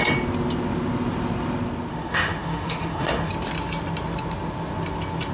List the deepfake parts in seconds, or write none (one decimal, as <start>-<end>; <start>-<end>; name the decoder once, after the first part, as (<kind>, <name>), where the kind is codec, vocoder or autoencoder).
1.9-3.3 (autoencoder, DAC-VAE)